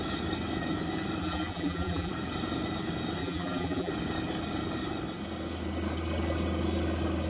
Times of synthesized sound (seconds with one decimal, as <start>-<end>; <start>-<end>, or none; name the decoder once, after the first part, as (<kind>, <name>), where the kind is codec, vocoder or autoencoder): 1.2-2.1 (vocoder, BigVGAN v2); 3.2-3.9